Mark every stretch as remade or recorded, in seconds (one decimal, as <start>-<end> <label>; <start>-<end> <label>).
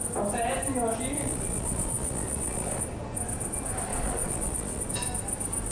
0.0-1.2 recorded; 1.2-2.8 remade; 2.8-3.9 recorded; 3.9-4.8 remade; 4.8-5.7 recorded